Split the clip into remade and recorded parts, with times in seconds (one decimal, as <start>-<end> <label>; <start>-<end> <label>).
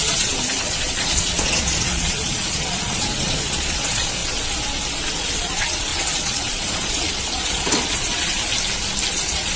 0.0-4.2 remade; 4.2-5.1 recorded; 5.1-8.5 remade; 8.5-9.1 recorded; 9.1-9.6 remade